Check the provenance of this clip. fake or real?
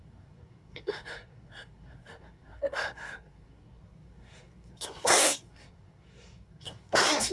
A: fake